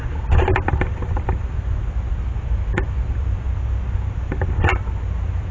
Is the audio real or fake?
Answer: real